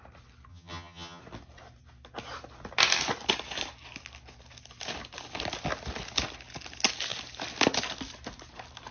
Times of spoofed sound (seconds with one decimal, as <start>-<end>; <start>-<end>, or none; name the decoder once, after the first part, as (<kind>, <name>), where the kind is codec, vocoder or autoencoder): 0.5-1.2 (vocoder, HiFi-GAN)